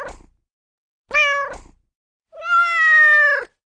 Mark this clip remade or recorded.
recorded